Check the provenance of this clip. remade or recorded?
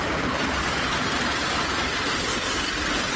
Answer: remade